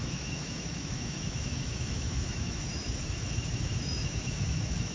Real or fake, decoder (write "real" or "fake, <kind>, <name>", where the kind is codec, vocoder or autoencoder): fake, autoencoder, DAC-VAE